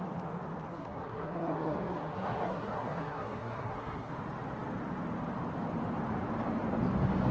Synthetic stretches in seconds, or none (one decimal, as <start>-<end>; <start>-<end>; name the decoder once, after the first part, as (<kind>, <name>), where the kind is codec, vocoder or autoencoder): 0.7-4.1 (codec, SNAC)